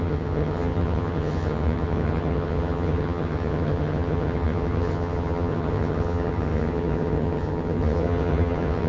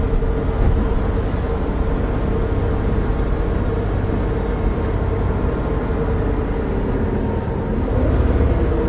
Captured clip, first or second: second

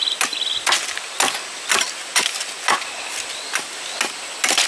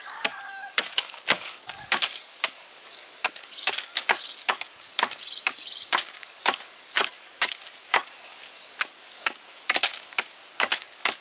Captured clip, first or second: first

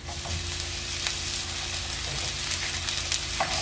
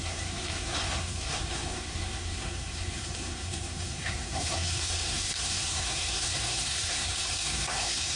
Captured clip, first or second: first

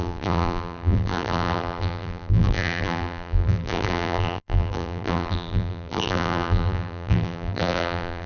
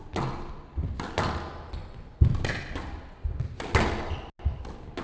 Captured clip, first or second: second